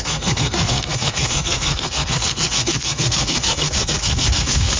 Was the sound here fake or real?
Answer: fake